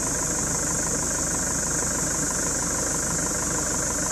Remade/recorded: recorded